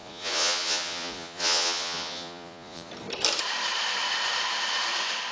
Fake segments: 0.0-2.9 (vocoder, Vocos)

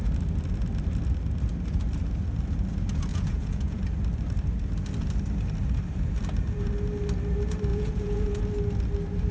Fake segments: 3.1-3.8 (vocoder, Vocos); 7.7-8.4

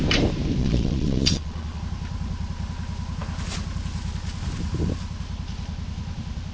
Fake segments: 0.6-1.8 (vocoder, Vocos)

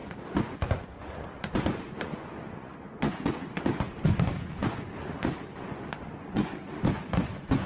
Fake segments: 0.0-7.7 (vocoder, Vocos)

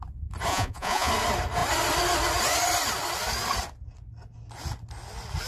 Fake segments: 0.5-1.1 (vocoder, Vocos)

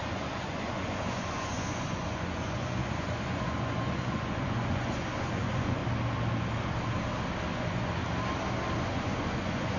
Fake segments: 0.0-5.8 (vocoder, Vocos); 7.5-8.0; 8.8-9.8